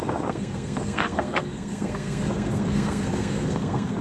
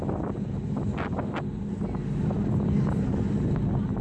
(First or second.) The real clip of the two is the second